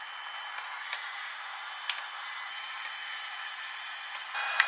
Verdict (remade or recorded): recorded